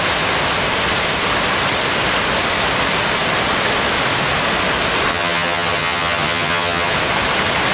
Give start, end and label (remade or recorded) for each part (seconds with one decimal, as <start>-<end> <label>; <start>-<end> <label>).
0.0-5.1 recorded; 5.1-6.9 remade; 6.9-7.7 recorded

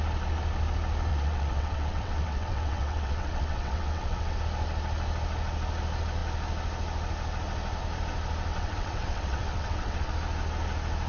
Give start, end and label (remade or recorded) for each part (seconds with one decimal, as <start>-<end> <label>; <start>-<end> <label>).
0.0-1.1 recorded; 1.1-4.4 remade; 4.4-8.5 recorded; 8.5-10.1 remade; 10.1-11.1 recorded